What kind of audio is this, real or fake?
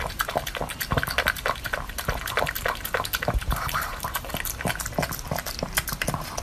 real